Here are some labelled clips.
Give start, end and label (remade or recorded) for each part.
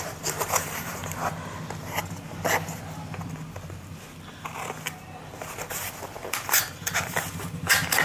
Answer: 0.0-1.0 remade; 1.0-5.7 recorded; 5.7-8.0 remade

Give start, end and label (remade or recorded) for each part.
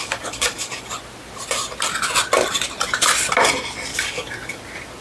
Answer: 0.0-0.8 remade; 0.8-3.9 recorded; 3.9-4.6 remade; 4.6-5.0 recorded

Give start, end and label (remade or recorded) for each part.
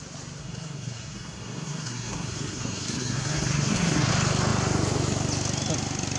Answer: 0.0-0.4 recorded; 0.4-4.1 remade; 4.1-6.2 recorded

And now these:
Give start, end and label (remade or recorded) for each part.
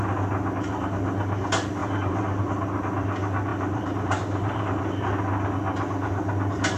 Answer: 0.0-1.8 recorded; 1.8-2.5 remade; 2.5-3.5 recorded; 3.5-4.8 remade; 4.8-6.8 recorded